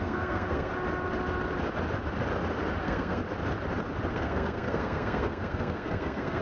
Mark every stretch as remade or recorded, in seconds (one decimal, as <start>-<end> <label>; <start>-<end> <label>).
0.0-0.7 remade; 0.7-2.8 recorded; 2.8-3.2 remade; 3.2-4.1 recorded; 4.1-6.4 remade